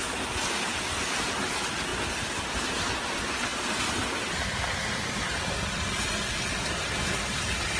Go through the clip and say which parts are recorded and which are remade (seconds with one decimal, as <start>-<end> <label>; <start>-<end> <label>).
0.0-7.8 recorded

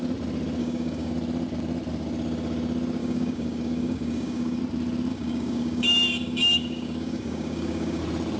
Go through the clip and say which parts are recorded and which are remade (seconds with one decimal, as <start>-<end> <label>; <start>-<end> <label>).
0.0-0.6 recorded; 0.6-1.1 remade; 1.1-3.0 recorded; 3.0-4.6 remade; 4.6-5.1 recorded; 5.1-8.0 remade; 8.0-8.4 recorded